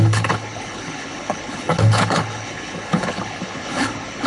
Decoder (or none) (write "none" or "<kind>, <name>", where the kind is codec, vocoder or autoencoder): codec, HILCodec